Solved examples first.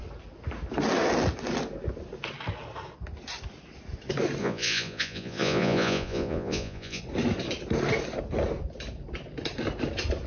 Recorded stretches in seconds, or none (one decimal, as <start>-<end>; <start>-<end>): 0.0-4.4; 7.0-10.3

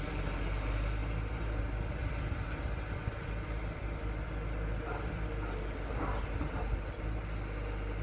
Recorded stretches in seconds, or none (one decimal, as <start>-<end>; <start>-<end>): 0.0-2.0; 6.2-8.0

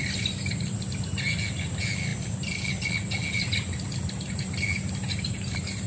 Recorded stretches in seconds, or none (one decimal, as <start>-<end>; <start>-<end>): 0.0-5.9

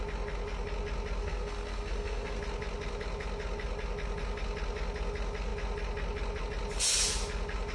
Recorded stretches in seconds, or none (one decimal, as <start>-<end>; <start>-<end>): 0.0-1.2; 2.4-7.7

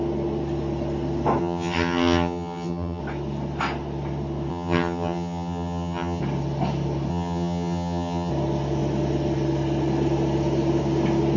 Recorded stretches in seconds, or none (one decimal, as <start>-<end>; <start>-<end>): 0.0-1.4; 3.0-4.5; 6.2-7.1; 8.3-11.4

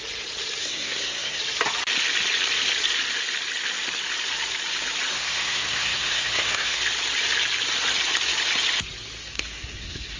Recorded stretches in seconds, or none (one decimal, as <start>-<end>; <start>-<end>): 0.0-0.6; 1.4-5.1; 6.8-9.2

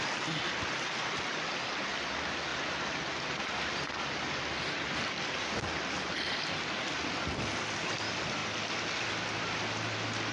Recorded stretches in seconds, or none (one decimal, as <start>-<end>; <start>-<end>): 0.0-10.3